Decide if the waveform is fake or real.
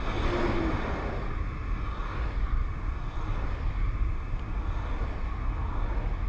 real